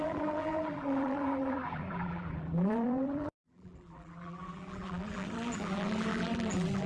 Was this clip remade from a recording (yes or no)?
yes